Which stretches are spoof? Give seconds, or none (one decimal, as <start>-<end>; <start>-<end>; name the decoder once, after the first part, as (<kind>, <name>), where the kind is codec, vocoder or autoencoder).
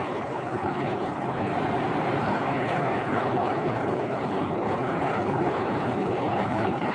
0.0-1.5 (codec, HILCodec); 2.2-6.9